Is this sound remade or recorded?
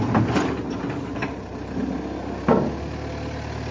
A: recorded